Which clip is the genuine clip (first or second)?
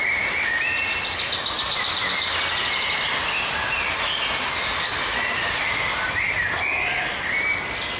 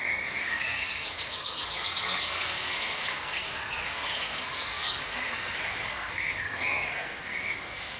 first